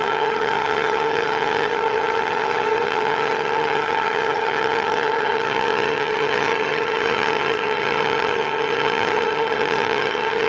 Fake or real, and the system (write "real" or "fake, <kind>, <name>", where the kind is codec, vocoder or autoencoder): fake, vocoder, HiFi-GAN